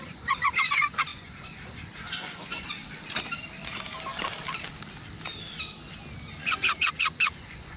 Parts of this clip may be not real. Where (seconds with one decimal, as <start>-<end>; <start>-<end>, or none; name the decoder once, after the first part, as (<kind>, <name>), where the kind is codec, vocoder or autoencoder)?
0.0-2.8 (vocoder, Vocos); 6.4-7.8